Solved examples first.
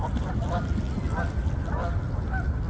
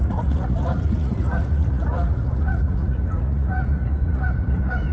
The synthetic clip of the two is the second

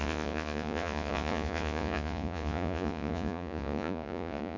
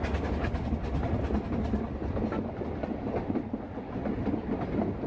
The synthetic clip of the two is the first